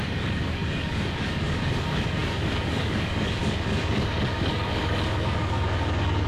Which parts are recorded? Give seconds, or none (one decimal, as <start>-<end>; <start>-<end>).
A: none